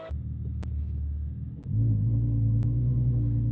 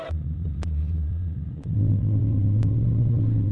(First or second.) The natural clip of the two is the first